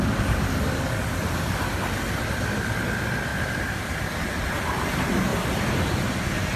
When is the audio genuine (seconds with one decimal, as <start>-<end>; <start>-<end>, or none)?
0.0-3.3; 4.0-5.3